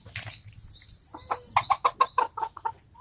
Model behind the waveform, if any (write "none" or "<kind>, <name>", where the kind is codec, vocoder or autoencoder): none